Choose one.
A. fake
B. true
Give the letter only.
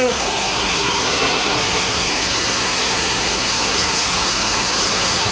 A